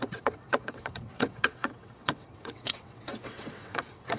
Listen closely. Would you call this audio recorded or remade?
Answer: remade